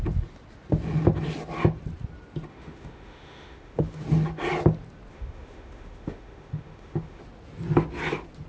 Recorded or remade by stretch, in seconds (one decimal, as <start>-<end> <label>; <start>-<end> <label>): 0.0-2.5 recorded; 2.5-4.0 remade; 4.0-5.1 recorded; 5.1-7.2 remade; 7.2-8.5 recorded

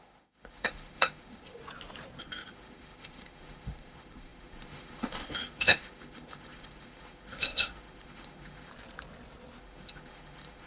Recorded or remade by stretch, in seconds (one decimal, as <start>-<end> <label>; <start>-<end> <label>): 0.0-1.6 remade; 1.6-2.2 recorded; 2.2-8.7 remade; 8.7-9.6 recorded; 9.6-10.7 remade

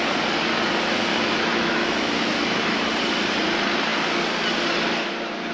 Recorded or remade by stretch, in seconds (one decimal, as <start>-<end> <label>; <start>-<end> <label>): 0.0-1.1 recorded; 1.1-2.9 remade; 2.9-5.5 recorded

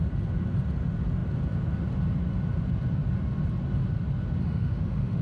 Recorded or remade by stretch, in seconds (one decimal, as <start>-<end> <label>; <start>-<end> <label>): 0.0-4.4 recorded; 4.4-5.2 remade

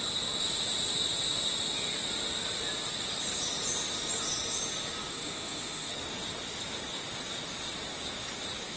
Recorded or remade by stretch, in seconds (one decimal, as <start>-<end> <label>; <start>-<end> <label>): 0.0-5.1 recorded; 5.1-5.9 remade; 5.9-8.8 recorded